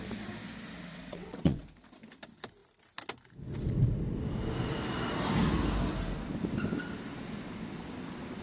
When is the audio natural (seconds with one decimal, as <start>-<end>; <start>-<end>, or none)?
0.0-0.9; 1.6-8.4